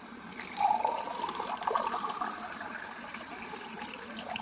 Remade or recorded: remade